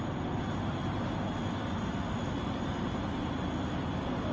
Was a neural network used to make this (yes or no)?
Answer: no